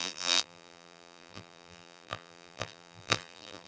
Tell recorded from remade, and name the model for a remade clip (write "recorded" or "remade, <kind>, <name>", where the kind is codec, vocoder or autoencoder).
remade, vocoder, BigVGAN v2